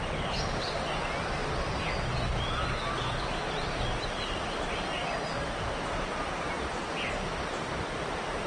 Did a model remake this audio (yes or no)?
no